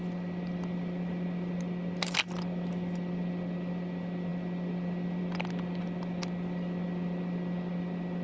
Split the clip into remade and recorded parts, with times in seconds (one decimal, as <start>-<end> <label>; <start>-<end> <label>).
0.0-8.2 recorded